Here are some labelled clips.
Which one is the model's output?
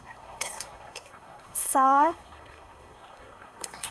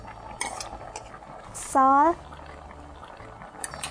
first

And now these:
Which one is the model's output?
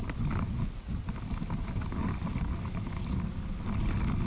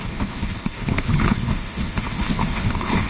second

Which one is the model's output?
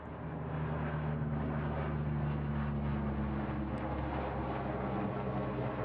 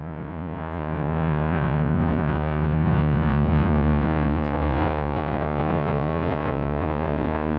second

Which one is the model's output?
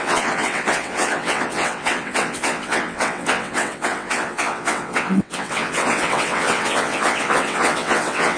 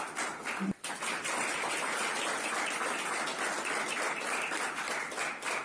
first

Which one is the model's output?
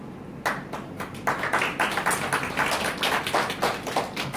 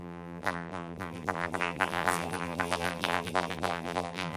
second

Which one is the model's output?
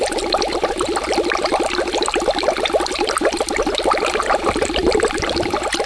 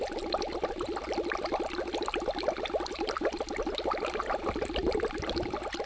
first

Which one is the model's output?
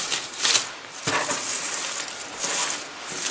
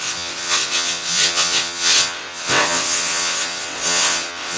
second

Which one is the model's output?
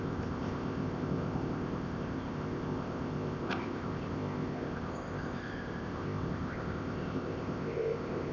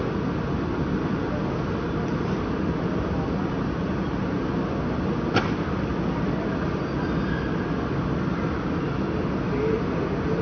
first